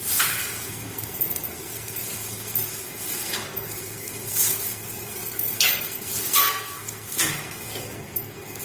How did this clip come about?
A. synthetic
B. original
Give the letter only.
A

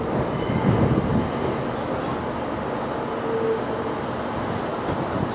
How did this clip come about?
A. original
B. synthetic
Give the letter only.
A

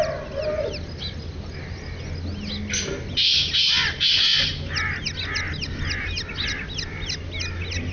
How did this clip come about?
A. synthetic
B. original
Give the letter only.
B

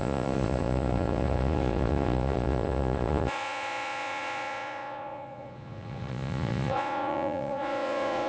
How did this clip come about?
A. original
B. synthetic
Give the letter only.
B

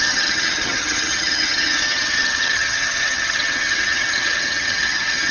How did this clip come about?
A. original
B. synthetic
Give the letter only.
B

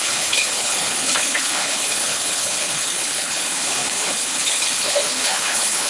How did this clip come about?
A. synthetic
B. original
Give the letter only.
A